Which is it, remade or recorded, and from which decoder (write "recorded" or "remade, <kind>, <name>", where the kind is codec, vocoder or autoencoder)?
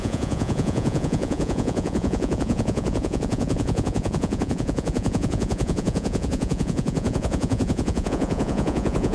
remade, vocoder, Vocos